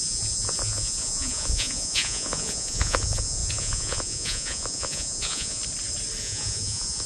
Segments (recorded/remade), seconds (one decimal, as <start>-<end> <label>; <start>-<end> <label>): 0.0-5.6 remade; 5.6-6.2 recorded; 6.2-7.1 remade